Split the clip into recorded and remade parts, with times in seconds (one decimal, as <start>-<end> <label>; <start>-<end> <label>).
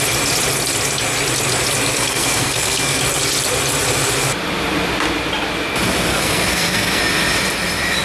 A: 0.0-1.9 recorded; 1.9-3.0 remade; 3.0-6.1 recorded; 6.1-7.0 remade; 7.0-8.0 recorded